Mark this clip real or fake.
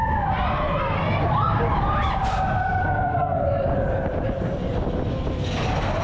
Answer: real